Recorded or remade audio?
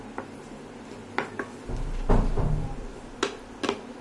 recorded